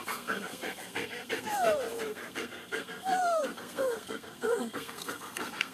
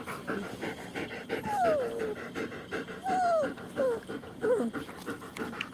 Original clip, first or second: second